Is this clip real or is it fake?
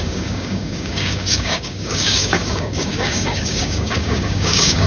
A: fake